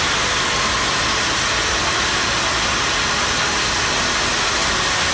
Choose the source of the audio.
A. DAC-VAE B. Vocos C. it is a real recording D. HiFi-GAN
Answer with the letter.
C